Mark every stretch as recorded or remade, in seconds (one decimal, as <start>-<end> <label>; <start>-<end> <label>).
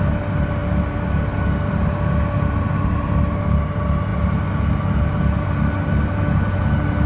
0.0-7.1 recorded